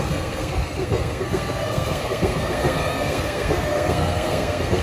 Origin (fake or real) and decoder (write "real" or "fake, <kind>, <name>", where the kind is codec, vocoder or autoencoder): fake, codec, SNAC